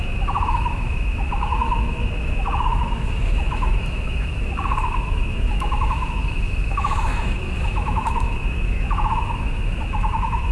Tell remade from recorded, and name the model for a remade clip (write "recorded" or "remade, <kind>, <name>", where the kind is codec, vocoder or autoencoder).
remade, autoencoder, DAC-VAE